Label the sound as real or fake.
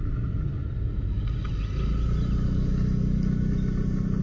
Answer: real